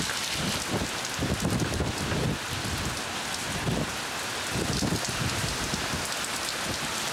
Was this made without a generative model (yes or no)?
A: yes